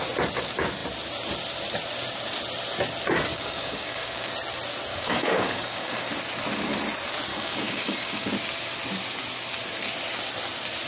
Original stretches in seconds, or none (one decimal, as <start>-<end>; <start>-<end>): 0.0-3.3; 4.3-4.9; 6.1-7.3; 8.3-10.9